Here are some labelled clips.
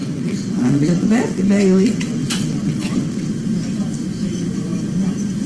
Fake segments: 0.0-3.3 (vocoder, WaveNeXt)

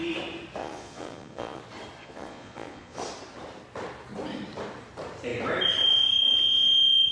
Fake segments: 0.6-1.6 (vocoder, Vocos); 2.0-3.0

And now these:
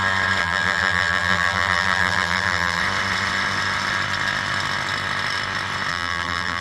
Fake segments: 0.4-2.8 (vocoder, BigVGAN v2); 5.9-6.6

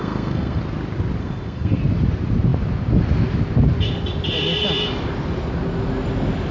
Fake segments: 0.0-0.6 (codec, SNAC); 1.2-1.8

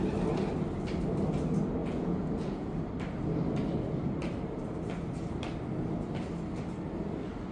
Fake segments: 1.8-2.7 (vocoder, Vocos)